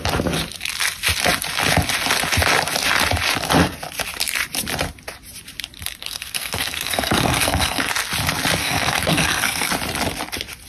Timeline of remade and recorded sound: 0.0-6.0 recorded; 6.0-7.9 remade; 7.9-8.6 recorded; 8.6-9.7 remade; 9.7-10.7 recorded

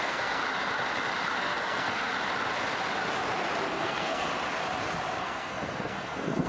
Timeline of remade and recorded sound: 0.0-0.4 remade; 0.4-1.4 recorded; 1.4-2.1 remade; 2.1-3.7 recorded; 3.7-4.3 remade; 4.3-5.2 recorded; 5.2-6.5 remade

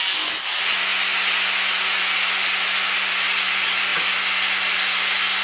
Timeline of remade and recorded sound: 0.0-5.4 recorded